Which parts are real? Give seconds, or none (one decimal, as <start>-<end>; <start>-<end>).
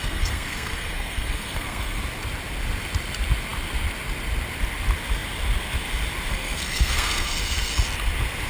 2.0-6.3; 7.7-8.5